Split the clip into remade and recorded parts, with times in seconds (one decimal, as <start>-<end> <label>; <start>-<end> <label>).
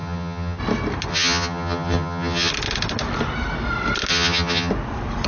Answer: 0.0-0.6 remade; 0.6-1.1 recorded; 1.1-2.5 remade; 2.5-4.1 recorded; 4.1-4.7 remade; 4.7-5.3 recorded